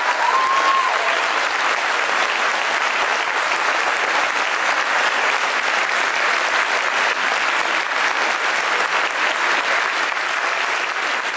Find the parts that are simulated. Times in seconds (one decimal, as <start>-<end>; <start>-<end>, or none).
0.8-1.4